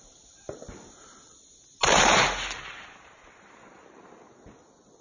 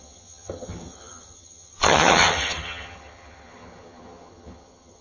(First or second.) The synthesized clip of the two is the second